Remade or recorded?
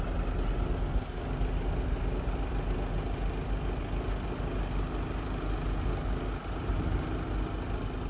recorded